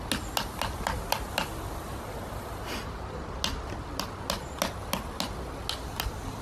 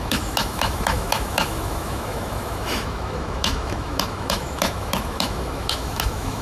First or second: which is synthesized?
second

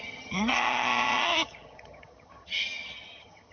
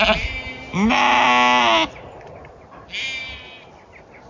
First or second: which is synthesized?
first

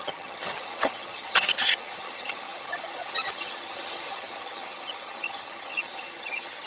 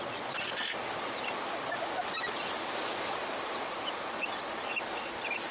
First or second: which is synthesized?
first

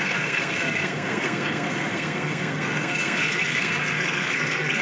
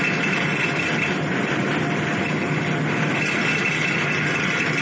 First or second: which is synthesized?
first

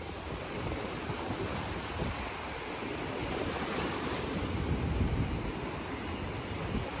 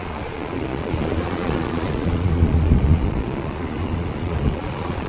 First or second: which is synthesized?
second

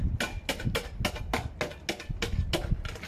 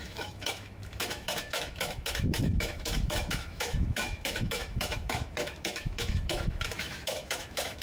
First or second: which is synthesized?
second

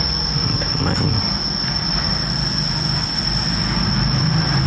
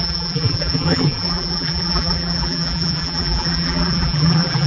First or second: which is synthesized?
second